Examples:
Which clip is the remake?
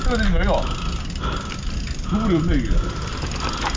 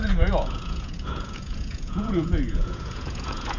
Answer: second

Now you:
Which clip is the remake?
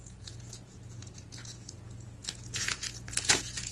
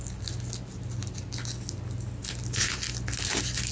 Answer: first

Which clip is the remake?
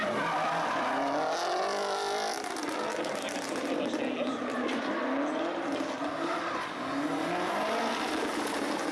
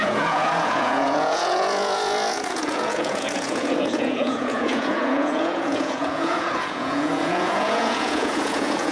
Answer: second